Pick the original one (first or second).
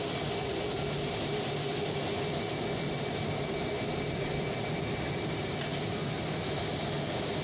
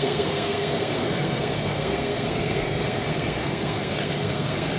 first